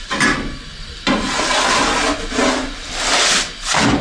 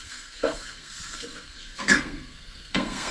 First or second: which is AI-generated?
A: second